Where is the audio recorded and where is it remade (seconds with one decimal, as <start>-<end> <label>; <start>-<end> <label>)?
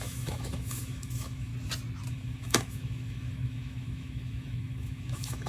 0.0-1.5 remade; 1.5-2.1 recorded; 2.1-5.5 remade